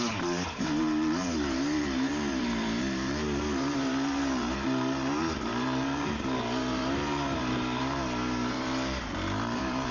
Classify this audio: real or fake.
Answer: fake